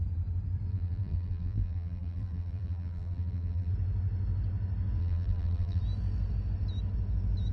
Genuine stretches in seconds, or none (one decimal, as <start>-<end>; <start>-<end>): 0.0-0.7; 3.7-5.0; 5.8-7.5